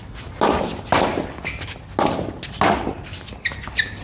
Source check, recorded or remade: recorded